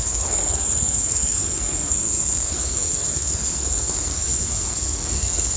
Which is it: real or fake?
fake